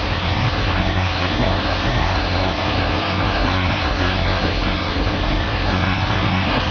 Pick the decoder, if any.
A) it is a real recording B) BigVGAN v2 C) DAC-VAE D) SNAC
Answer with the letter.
D